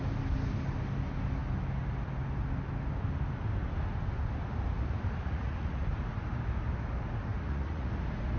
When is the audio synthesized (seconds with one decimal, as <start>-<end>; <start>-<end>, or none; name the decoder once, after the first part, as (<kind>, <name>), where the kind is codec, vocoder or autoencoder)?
5.2-5.8 (vocoder, Vocos); 7.3-7.9